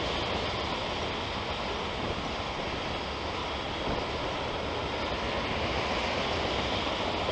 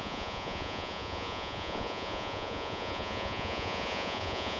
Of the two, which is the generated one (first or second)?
second